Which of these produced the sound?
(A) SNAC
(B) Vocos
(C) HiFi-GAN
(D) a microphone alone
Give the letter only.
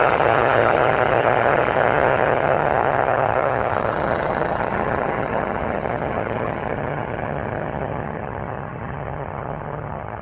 C